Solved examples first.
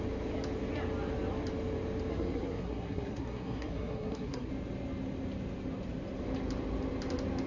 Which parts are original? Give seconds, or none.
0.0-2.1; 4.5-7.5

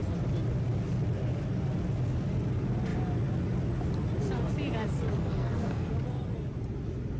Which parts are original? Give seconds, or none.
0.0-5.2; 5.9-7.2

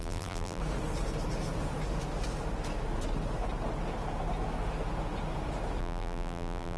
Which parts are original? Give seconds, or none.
0.6-5.8